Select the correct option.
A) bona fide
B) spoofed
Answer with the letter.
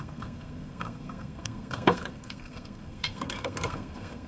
B